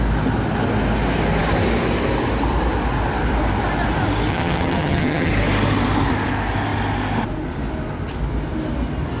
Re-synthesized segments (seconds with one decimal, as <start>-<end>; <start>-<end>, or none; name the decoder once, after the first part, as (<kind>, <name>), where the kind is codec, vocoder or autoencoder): 4.3-5.3 (vocoder, HiFi-GAN)